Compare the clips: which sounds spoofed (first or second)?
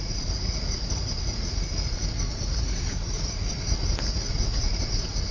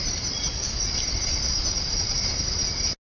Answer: first